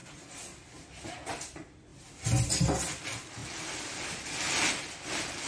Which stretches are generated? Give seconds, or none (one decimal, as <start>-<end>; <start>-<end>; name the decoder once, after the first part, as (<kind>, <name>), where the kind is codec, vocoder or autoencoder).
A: none

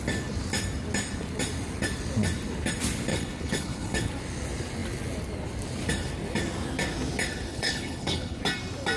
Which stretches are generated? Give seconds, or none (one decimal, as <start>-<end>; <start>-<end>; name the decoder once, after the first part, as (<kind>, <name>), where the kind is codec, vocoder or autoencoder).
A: 3.1-4.1 (codec, HILCodec); 7.5-8.4

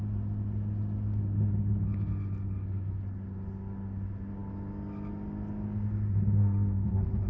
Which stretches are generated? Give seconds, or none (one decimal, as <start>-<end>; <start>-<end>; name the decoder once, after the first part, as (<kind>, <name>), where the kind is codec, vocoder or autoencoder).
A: none

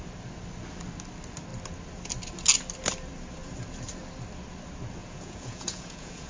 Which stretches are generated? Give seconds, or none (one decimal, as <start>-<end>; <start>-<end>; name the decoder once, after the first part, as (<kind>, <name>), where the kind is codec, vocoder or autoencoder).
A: 5.0-6.3 (vocoder, Vocos)